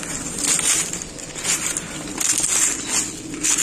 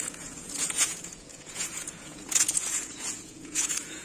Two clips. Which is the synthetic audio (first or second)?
second